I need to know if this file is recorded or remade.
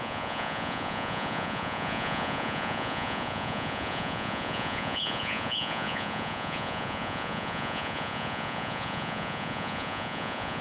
remade